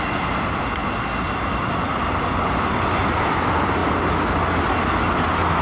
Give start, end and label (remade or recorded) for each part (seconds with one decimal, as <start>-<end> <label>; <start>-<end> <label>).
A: 0.0-5.6 recorded